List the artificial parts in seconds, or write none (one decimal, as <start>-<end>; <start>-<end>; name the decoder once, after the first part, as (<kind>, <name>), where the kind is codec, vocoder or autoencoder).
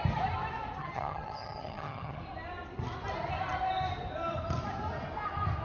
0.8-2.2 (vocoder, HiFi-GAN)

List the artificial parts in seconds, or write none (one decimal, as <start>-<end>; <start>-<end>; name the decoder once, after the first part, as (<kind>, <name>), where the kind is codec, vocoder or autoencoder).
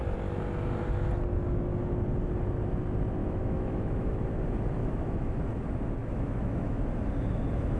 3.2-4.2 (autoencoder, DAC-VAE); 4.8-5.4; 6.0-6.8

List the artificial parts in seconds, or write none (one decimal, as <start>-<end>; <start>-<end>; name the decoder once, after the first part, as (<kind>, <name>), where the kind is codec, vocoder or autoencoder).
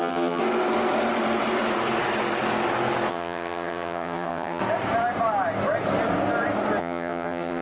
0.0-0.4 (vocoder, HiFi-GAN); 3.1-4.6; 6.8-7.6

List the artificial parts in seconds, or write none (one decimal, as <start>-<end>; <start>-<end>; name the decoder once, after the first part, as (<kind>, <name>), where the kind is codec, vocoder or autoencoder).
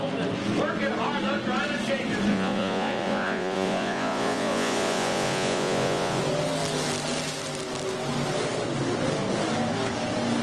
2.3-6.2 (vocoder, Vocos)